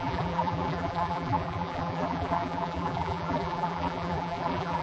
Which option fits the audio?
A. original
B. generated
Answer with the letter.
B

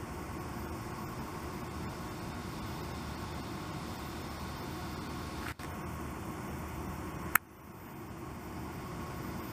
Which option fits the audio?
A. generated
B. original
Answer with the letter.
B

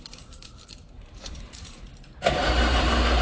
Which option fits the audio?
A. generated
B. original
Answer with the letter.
A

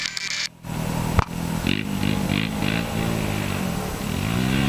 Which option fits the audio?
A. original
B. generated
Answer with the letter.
A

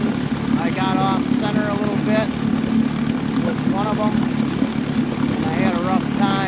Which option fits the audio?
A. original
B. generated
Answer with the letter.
A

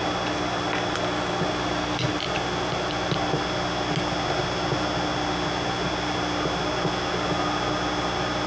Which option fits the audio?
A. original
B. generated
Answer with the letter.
A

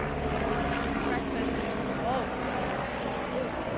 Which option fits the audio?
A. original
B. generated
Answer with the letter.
A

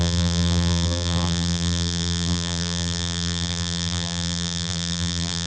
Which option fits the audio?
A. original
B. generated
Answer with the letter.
B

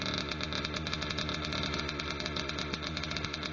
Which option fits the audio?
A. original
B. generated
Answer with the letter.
A